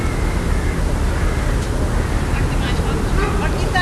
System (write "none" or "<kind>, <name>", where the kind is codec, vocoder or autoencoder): none